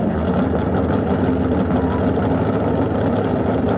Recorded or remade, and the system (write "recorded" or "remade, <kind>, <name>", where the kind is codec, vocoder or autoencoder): recorded